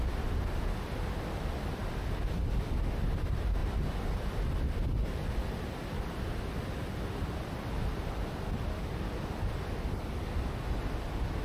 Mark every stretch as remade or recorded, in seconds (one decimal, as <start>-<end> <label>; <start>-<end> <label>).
0.0-3.6 recorded; 3.6-4.3 remade; 4.3-11.4 recorded